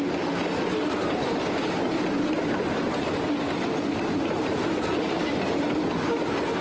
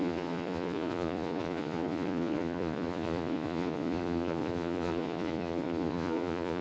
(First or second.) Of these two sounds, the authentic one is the first